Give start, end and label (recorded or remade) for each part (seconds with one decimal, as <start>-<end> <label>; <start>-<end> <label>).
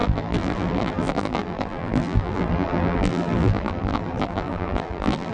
0.0-5.3 remade